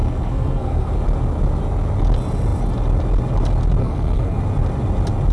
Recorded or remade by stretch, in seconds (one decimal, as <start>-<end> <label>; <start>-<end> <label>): 0.0-0.9 remade; 0.9-3.8 recorded; 3.8-4.4 remade; 4.4-5.3 recorded